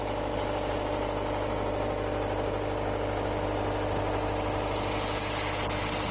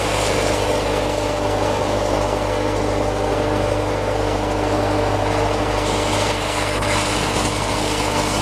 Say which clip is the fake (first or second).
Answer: second